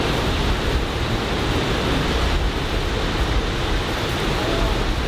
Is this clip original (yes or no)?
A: yes